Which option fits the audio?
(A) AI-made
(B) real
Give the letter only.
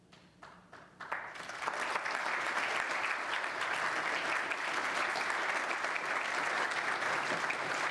B